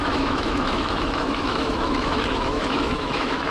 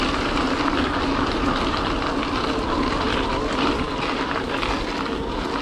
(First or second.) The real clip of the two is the second